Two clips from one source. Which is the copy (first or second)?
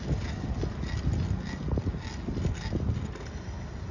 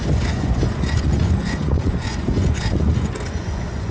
second